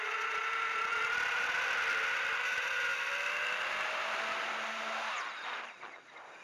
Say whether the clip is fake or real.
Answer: real